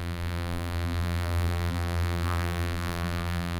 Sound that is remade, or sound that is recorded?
remade